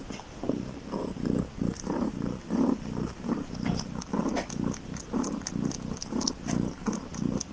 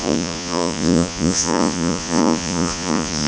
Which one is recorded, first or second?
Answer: first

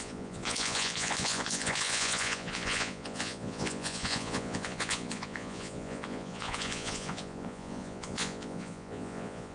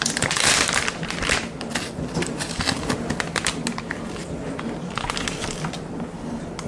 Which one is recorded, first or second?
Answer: second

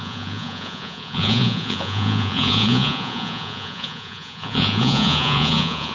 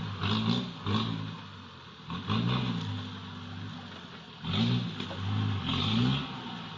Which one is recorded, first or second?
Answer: second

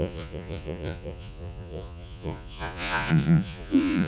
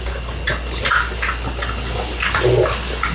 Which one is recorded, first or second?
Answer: second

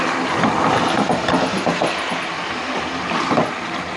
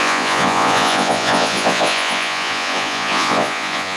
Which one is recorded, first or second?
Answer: first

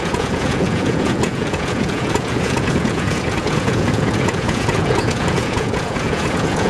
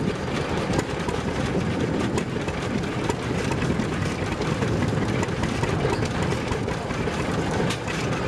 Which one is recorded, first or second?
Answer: second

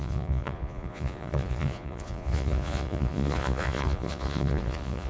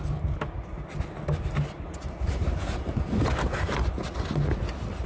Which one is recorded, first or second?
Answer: second